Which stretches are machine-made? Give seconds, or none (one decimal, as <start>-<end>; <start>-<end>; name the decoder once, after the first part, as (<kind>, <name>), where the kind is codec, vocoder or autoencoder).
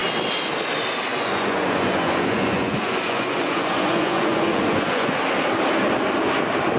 1.1-5.2 (vocoder, Vocos)